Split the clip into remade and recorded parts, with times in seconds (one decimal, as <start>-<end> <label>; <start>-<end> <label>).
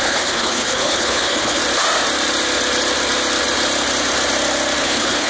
0.0-1.6 remade; 1.6-4.8 recorded; 4.8-5.3 remade